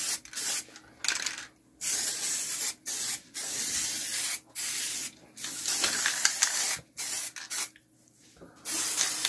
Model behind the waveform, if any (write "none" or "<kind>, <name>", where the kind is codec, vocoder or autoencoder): none